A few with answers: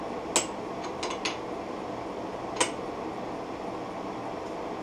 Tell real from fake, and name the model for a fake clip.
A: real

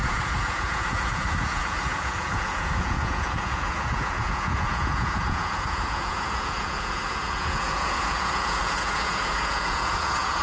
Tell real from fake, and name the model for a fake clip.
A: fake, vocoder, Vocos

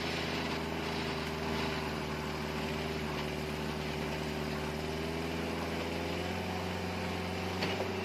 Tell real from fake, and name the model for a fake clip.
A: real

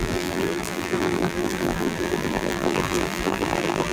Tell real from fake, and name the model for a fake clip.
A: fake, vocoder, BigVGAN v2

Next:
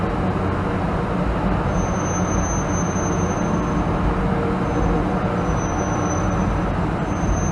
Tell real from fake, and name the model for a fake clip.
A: real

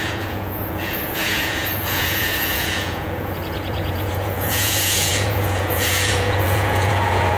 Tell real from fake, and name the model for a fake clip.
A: fake, vocoder, Vocos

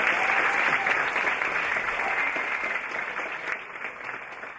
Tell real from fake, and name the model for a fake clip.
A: real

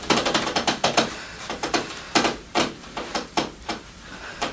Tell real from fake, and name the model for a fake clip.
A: fake, vocoder, BigVGAN v2